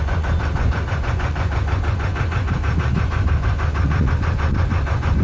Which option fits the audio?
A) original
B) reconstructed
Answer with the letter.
B